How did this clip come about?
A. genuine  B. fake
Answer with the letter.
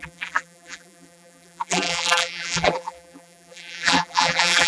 B